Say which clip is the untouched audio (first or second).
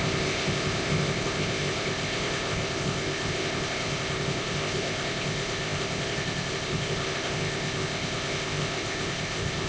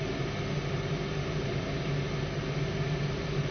second